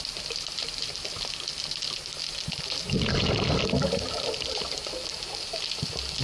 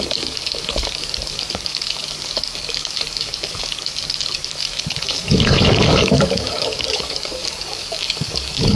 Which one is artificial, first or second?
second